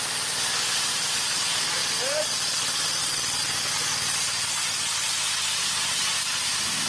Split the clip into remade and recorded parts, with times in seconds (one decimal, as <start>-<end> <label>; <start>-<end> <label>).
0.0-6.9 recorded